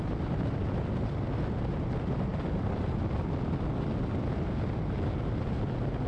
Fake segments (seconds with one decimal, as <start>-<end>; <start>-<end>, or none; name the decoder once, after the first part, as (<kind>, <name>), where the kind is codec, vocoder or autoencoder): 2.3-3.2 (vocoder, BigVGAN v2)